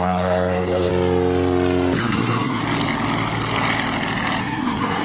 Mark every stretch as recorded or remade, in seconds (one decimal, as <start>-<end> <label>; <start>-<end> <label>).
0.0-0.9 remade; 0.9-2.0 recorded; 2.0-2.6 remade; 2.6-4.4 recorded; 4.4-5.0 remade